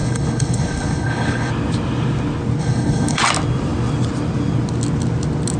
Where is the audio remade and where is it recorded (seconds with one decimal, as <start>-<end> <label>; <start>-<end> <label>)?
0.0-1.5 remade; 1.5-2.6 recorded; 2.6-3.2 remade; 3.2-5.6 recorded